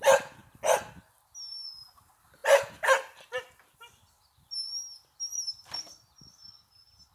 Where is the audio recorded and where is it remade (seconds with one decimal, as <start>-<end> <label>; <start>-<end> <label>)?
0.0-7.1 recorded